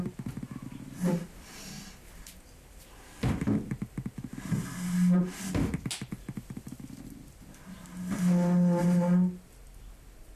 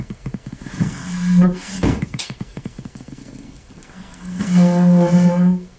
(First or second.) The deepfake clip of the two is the second